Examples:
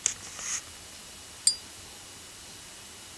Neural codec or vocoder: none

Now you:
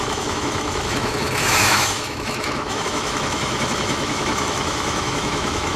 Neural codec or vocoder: autoencoder, DAC-VAE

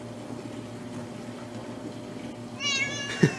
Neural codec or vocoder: none